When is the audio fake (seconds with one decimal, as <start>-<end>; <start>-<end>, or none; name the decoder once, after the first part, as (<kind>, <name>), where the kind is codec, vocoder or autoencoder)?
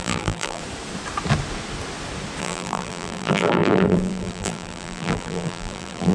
0.0-0.6 (vocoder, BigVGAN v2); 2.4-6.1